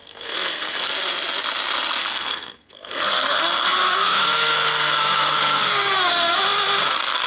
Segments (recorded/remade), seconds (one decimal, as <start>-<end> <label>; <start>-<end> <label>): 0.0-0.9 remade; 0.9-2.0 recorded; 2.0-6.4 remade; 6.4-7.3 recorded